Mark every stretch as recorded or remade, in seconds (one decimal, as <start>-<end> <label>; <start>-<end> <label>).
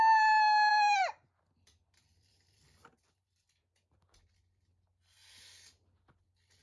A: 0.0-0.7 recorded; 0.7-4.2 remade; 4.2-6.6 recorded